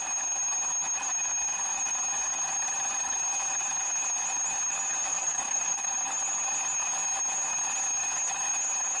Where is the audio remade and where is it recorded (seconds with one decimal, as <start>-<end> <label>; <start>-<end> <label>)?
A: 0.0-5.1 recorded; 5.1-5.9 remade; 5.9-9.0 recorded